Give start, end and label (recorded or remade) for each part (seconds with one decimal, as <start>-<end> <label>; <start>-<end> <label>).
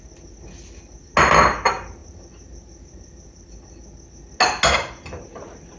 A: 0.0-5.8 recorded